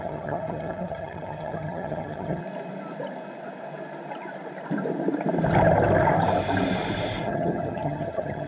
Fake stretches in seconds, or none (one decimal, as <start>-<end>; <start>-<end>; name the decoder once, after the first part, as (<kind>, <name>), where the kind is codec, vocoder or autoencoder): 0.0-2.4 (vocoder, HiFi-GAN); 7.2-8.5